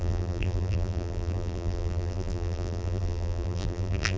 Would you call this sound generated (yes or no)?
yes